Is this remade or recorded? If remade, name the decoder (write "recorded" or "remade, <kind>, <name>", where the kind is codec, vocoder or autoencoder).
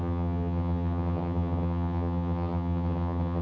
remade, vocoder, HiFi-GAN